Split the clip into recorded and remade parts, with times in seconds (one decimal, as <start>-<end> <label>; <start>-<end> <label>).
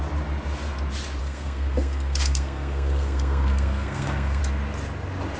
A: 0.0-1.2 recorded; 1.2-4.4 remade; 4.4-5.4 recorded